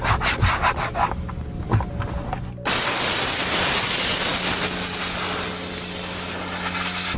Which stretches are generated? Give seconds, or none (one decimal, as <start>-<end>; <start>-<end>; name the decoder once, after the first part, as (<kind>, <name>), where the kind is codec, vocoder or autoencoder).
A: none